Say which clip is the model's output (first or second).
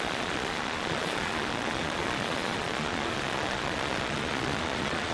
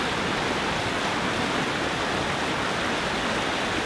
first